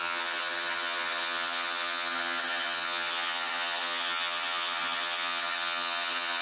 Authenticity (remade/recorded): remade